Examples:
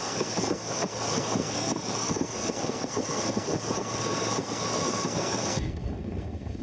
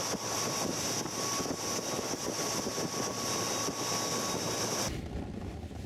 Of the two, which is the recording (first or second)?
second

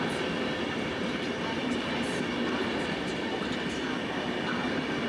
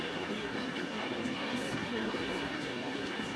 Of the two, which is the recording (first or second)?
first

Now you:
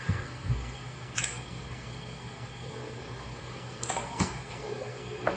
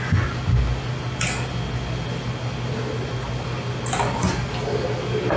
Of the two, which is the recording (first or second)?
second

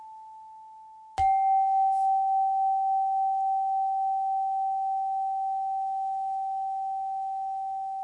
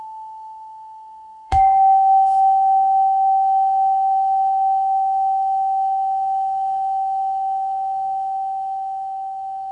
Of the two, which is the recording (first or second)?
first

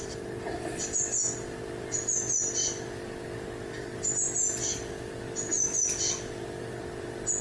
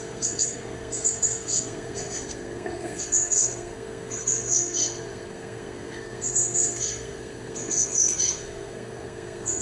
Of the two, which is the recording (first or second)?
first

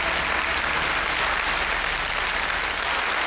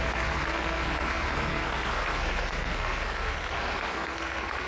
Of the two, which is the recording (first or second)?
first